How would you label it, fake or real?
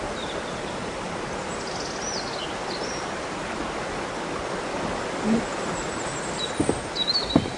real